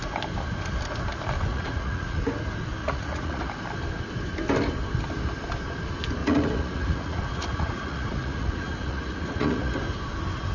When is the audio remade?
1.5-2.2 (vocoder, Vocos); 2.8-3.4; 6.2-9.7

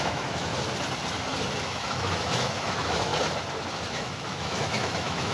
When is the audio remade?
0.0-0.5 (autoencoder, DAC-VAE); 1.6-3.1; 3.9-5.3

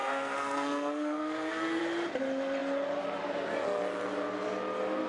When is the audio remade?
0.0-1.8 (codec, SNAC)

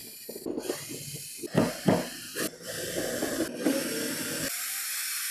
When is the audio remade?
none

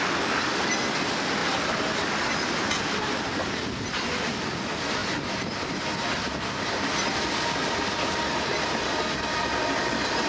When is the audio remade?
none